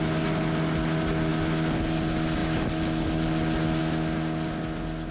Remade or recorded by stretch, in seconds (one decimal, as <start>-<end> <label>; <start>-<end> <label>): 0.0-5.1 recorded